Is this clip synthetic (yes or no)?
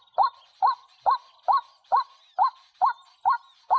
no